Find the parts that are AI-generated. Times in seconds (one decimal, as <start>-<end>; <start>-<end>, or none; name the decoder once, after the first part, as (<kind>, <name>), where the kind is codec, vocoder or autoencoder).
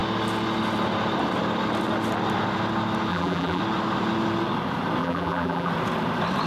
3.1-3.6 (vocoder, BigVGAN v2); 5.0-5.7